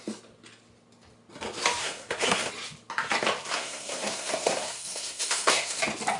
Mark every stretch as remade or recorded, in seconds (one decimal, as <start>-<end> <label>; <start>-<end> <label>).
0.0-1.8 recorded; 1.8-2.5 remade; 2.5-3.4 recorded; 3.4-5.8 remade; 5.8-6.2 recorded